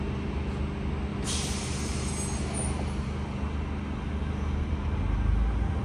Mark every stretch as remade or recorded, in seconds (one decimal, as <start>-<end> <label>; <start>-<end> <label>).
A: 0.0-1.1 recorded; 1.1-2.1 remade; 2.1-5.8 recorded